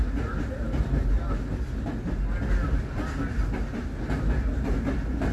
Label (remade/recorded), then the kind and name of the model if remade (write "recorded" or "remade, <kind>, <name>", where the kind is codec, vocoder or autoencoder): recorded